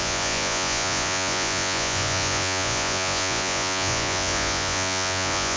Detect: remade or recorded remade